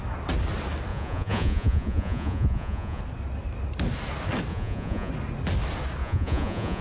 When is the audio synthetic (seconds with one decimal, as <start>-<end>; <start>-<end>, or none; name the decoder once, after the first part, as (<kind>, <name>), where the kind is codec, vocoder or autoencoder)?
0.9-3.0 (vocoder, Vocos); 4.5-5.1; 6.0-6.8